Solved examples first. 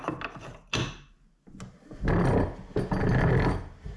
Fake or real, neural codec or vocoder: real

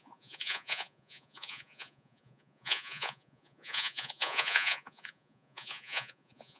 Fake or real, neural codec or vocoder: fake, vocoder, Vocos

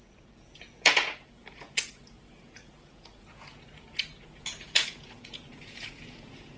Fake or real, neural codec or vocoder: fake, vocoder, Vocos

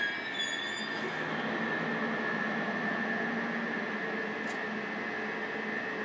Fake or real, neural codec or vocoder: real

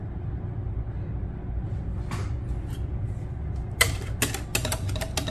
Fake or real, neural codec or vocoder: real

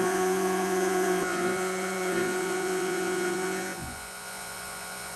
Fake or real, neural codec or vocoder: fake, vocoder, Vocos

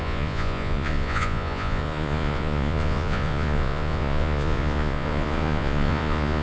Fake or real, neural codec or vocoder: fake, vocoder, Vocos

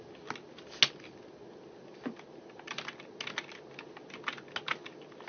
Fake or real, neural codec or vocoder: real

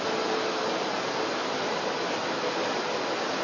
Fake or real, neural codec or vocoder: real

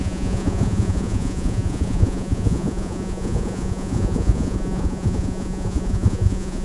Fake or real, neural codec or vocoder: fake, vocoder, Vocos